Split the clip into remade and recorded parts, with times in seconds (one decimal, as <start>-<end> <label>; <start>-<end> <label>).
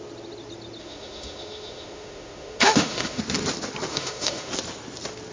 0.0-0.8 recorded; 0.8-3.2 remade; 3.2-3.9 recorded; 3.9-4.5 remade; 4.5-5.3 recorded